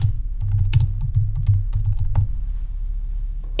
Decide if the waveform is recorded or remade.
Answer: recorded